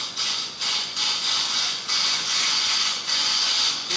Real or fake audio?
fake